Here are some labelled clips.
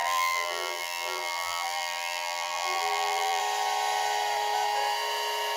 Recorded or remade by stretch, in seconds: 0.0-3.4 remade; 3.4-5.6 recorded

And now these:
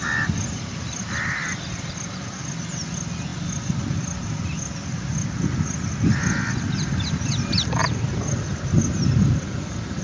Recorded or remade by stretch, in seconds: 0.0-10.0 recorded

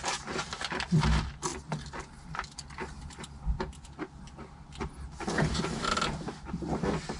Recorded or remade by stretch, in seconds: 0.0-7.2 recorded

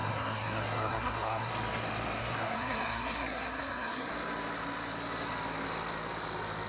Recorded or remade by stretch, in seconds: 0.0-1.5 remade; 1.5-2.2 recorded; 2.2-4.1 remade; 4.1-6.7 recorded